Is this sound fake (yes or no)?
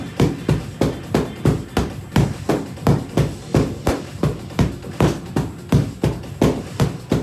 no